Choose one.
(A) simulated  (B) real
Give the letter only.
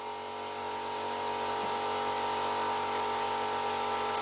B